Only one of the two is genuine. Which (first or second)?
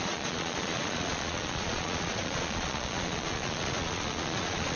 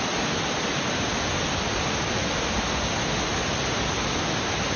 second